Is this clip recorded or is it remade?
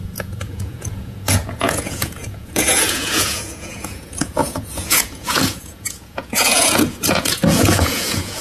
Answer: remade